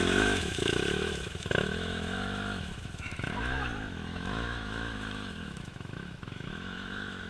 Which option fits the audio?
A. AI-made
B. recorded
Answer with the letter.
A